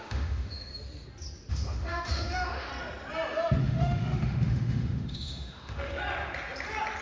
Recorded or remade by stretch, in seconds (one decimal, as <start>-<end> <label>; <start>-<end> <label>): 0.0-0.7 remade; 0.7-1.5 recorded; 1.5-2.7 remade; 2.7-3.6 recorded; 3.6-6.0 remade; 6.0-7.0 recorded